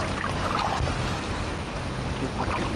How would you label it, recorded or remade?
recorded